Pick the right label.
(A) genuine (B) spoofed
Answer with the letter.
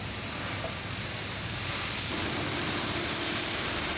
B